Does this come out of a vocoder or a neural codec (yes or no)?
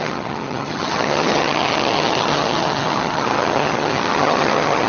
yes